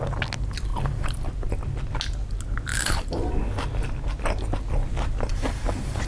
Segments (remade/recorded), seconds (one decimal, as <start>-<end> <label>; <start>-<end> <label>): 0.0-0.7 recorded; 0.7-1.3 remade; 1.3-2.7 recorded; 2.7-3.3 remade; 3.3-5.3 recorded; 5.3-6.1 remade